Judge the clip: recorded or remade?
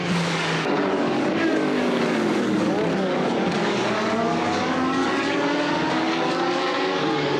remade